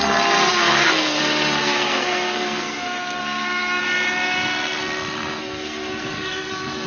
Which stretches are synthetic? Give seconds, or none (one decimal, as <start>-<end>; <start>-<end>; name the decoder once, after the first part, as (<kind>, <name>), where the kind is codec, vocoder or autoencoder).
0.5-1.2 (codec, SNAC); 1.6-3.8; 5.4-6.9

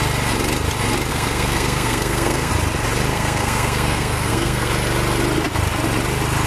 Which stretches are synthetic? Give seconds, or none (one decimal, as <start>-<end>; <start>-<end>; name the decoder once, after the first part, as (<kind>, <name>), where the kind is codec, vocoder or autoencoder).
1.1-2.5 (codec, SNAC); 3.1-4.7

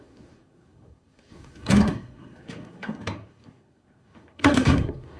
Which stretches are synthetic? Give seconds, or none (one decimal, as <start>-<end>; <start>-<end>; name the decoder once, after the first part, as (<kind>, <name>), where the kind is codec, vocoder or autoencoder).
0.0-5.2 (codec, SNAC)

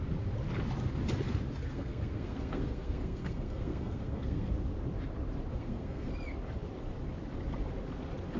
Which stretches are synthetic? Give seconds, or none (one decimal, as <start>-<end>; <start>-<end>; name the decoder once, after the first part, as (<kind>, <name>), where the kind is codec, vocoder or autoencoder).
1.7-4.5 (codec, SNAC); 5.5-6.1